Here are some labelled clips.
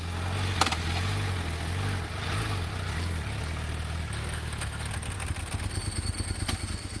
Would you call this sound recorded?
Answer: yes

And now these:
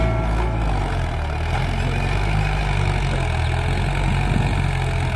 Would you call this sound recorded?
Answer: yes